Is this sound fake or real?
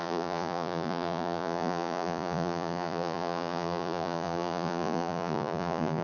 fake